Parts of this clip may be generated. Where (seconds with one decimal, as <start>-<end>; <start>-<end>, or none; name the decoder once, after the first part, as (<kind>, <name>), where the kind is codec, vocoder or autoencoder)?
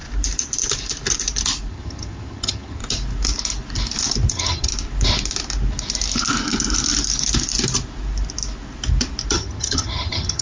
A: 1.7-2.8 (vocoder, HiFi-GAN); 4.3-4.7; 9.3-10.4